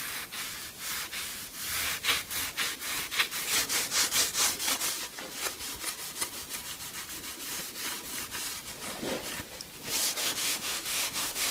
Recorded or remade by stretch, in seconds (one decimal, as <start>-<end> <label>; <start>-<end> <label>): 0.0-10.2 recorded; 10.2-11.5 remade